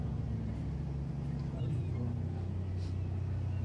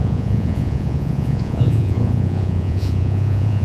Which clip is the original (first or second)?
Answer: first